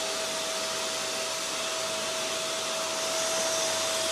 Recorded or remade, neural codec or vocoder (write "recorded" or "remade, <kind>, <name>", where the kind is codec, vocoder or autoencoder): recorded